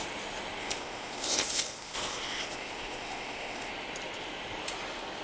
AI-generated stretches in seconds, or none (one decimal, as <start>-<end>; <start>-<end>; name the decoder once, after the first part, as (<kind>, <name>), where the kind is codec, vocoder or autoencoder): 0.6-3.7 (codec, ZipCodec)